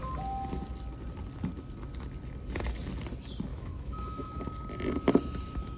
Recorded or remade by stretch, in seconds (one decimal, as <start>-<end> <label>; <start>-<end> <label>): 0.0-3.5 recorded; 3.5-4.4 remade; 4.4-5.8 recorded